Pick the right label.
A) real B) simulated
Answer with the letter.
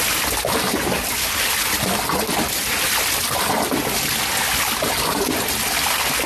A